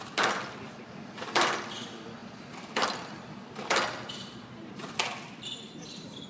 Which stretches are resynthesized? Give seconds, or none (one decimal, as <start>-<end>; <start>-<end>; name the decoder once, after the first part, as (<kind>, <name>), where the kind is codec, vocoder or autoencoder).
none